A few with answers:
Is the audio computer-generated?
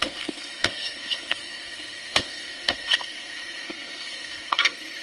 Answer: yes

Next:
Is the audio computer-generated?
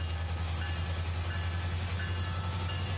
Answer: no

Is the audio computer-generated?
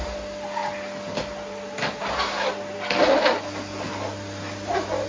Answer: no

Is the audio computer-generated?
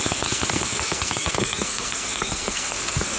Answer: yes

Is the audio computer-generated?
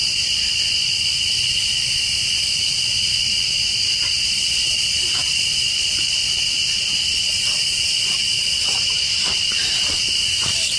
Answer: no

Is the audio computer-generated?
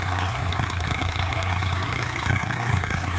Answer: yes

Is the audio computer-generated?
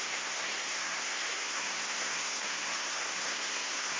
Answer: yes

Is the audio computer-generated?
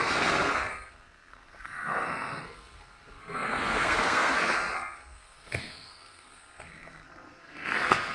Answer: yes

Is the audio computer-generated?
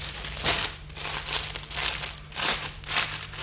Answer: no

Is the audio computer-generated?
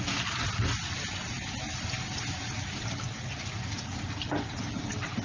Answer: no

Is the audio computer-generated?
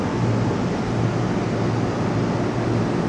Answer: no